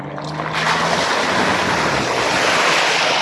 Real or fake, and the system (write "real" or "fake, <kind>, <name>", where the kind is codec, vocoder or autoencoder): real